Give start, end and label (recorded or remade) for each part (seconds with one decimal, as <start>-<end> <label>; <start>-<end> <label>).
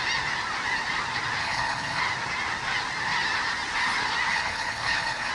0.0-1.4 recorded; 1.4-2.0 remade; 2.0-4.3 recorded; 4.3-5.3 remade